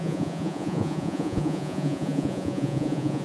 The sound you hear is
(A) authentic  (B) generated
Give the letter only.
B